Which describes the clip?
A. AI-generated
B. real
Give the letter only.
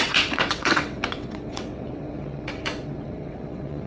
A